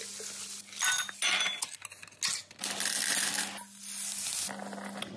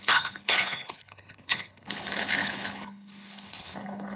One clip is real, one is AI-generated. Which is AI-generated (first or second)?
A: second